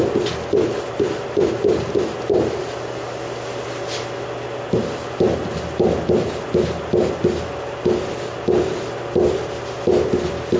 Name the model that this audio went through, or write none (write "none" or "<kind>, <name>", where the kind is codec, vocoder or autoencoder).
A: none